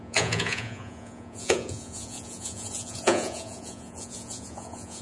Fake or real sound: fake